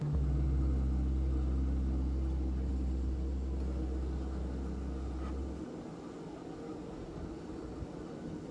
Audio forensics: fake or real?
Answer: real